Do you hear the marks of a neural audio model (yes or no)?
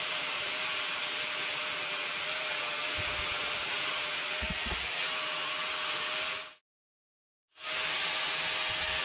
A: no